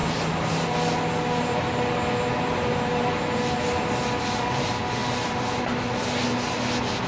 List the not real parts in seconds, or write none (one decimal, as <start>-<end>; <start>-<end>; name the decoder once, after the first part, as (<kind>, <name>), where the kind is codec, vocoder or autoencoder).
none